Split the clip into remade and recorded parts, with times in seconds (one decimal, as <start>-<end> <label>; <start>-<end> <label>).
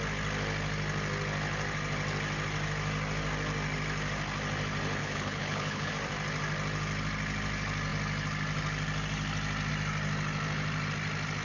0.0-5.0 recorded; 5.0-5.9 remade; 5.9-11.4 recorded